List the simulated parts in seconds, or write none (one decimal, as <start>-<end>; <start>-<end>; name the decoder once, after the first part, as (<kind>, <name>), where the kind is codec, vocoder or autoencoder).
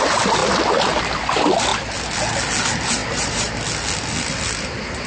3.0-3.6 (vocoder, BigVGAN v2)